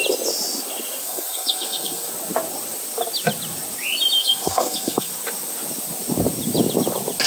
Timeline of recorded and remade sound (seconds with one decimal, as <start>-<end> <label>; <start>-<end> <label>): 0.0-1.0 recorded; 1.0-2.1 remade; 2.1-4.2 recorded; 4.2-5.1 remade; 5.1-7.3 recorded